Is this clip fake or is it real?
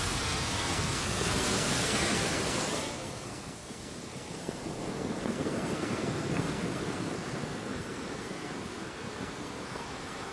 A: fake